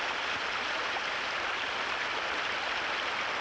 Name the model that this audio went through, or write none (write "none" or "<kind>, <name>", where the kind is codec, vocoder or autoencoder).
none